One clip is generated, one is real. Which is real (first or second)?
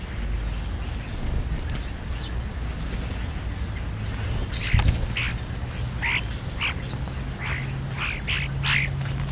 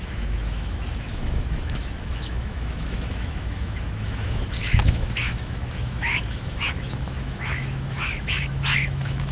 first